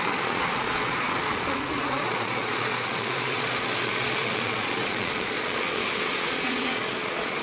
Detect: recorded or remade remade